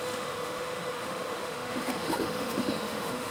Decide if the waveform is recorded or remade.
remade